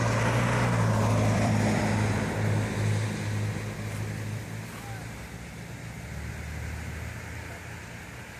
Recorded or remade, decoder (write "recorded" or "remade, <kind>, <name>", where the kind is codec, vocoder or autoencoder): remade, vocoder, BigVGAN v2